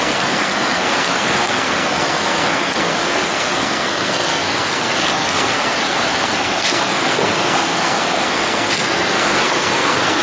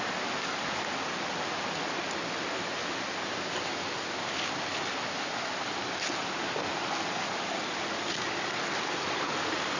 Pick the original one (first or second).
second